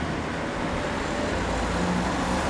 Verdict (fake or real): real